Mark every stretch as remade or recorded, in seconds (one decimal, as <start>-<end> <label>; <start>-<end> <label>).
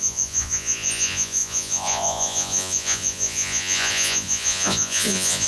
0.0-5.5 remade